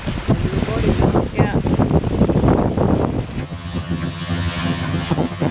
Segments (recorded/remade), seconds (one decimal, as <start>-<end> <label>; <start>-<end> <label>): 0.0-3.4 recorded; 3.4-5.5 remade